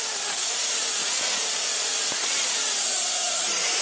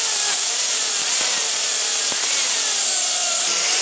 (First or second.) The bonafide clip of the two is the second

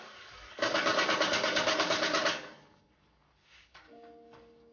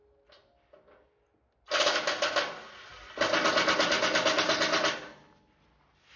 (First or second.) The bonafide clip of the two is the second